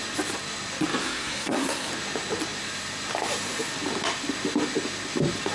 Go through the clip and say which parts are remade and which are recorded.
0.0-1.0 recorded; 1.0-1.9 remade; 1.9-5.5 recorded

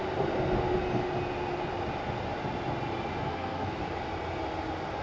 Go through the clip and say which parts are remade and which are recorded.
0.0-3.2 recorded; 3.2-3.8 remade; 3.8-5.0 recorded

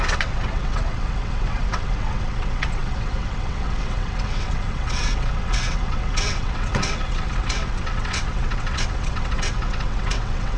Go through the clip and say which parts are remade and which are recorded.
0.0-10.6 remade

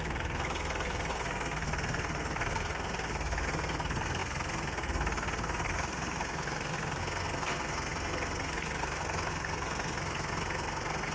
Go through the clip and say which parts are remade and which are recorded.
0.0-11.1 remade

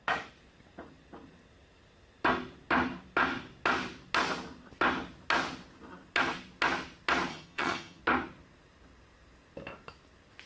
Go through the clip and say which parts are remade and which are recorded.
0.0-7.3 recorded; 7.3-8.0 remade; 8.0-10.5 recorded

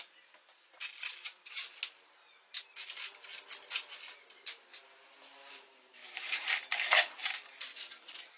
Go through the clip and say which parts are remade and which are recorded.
0.0-8.4 recorded

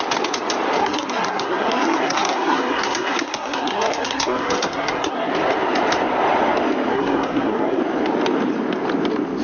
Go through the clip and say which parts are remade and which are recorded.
0.0-0.8 recorded; 0.8-5.3 remade; 5.3-6.9 recorded; 6.9-7.8 remade; 7.8-9.4 recorded

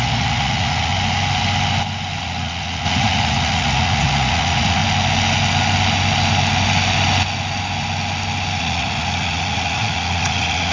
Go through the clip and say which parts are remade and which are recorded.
0.0-0.9 remade; 0.9-2.2 recorded; 2.2-4.8 remade; 4.8-8.6 recorded; 8.6-10.7 remade